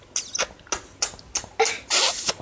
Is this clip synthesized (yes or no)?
no